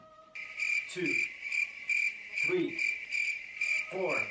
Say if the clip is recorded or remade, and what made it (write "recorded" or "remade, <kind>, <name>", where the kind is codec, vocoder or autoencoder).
recorded